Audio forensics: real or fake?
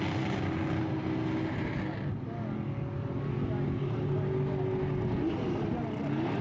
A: real